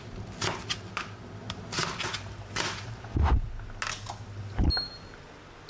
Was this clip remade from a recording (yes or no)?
no